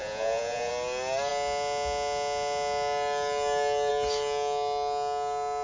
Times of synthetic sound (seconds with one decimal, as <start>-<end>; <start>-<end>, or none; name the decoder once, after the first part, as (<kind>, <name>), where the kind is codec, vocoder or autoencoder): 0.0-0.7 (vocoder, Vocos)